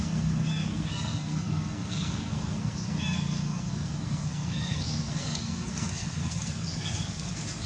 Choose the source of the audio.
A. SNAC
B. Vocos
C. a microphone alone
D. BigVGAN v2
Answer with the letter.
A